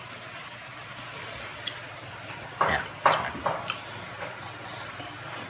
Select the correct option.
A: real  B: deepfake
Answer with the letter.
A